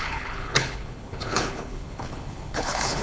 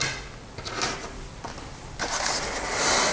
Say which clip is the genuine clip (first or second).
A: second